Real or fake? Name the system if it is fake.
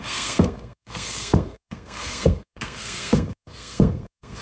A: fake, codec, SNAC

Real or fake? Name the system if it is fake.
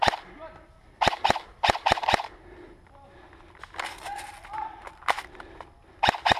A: real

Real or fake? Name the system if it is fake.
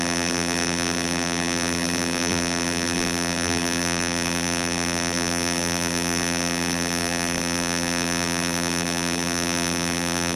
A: fake, vocoder, BigVGAN v2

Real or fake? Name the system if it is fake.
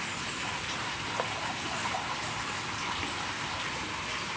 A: real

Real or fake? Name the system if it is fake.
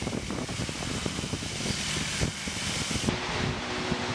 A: real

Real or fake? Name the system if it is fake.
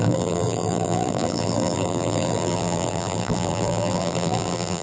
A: fake, vocoder, BigVGAN v2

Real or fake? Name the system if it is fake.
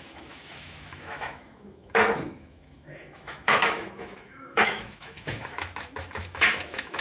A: fake, autoencoder, DAC-VAE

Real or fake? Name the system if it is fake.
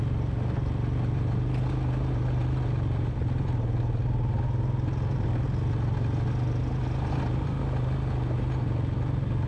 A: real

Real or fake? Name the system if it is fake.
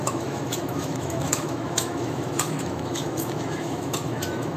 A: fake, autoencoder, DAC-VAE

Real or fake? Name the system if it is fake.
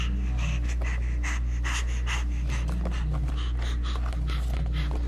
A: real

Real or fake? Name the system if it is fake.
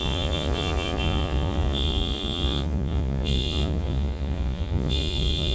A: fake, vocoder, Vocos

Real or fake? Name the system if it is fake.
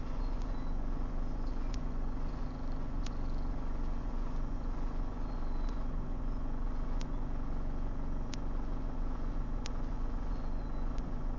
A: fake, vocoder, Vocos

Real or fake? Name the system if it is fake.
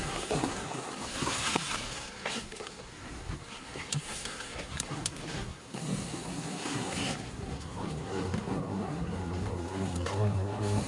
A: fake, codec, SNAC